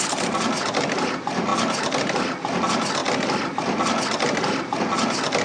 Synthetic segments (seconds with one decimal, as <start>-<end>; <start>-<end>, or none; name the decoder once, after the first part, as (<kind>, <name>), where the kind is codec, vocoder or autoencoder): none